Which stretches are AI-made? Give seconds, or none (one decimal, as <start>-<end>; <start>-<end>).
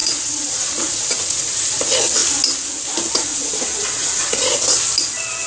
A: 0.0-1.8; 3.3-4.6